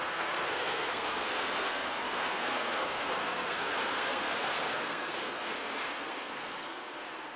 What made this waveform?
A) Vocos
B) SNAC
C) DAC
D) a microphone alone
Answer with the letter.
B